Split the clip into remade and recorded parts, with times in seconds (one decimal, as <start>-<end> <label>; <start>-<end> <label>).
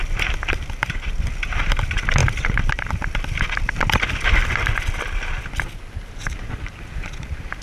0.0-7.6 recorded